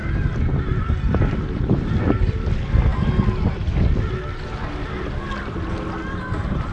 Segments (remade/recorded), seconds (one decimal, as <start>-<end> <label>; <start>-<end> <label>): 0.0-6.7 recorded

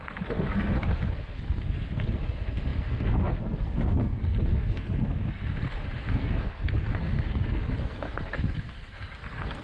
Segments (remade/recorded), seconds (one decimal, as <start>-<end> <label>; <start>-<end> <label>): 0.0-9.6 remade

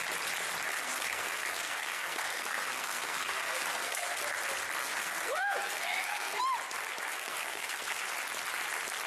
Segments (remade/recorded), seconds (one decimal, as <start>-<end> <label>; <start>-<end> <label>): 0.0-0.7 recorded; 0.7-4.2 remade; 4.2-4.8 recorded; 4.8-6.4 remade; 6.4-7.1 recorded; 7.1-8.1 remade; 8.1-9.1 recorded

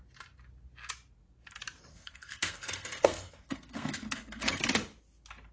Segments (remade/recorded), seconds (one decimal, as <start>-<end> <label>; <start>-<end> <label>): 0.0-1.9 recorded; 1.9-4.6 remade; 4.6-5.5 recorded

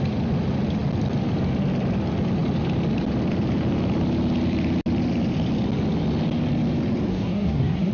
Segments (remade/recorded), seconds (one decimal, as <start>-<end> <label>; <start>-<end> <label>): 0.0-7.1 recorded; 7.1-7.9 remade

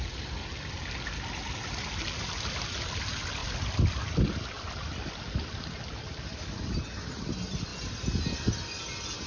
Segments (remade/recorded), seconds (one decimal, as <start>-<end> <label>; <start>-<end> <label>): 0.0-9.3 recorded

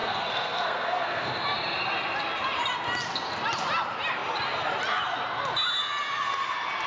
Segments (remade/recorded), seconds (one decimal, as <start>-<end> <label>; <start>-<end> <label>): 0.0-1.4 remade; 1.4-6.9 recorded